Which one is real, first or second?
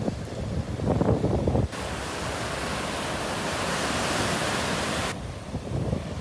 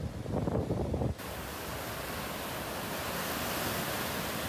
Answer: second